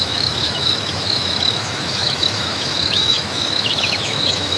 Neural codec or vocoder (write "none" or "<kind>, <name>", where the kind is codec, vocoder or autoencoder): autoencoder, DAC-VAE